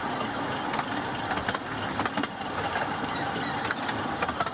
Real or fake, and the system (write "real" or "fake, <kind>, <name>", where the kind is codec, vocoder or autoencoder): real